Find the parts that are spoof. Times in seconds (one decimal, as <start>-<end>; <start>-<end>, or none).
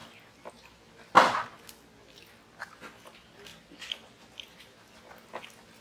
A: none